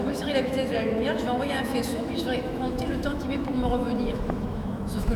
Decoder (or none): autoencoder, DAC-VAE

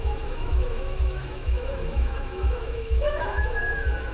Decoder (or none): autoencoder, DAC-VAE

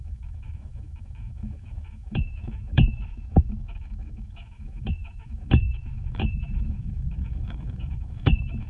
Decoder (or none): autoencoder, DAC-VAE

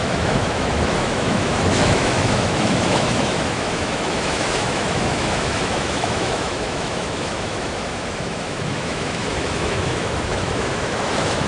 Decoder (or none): autoencoder, DAC-VAE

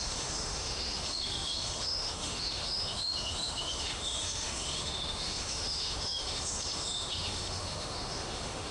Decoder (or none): autoencoder, DAC-VAE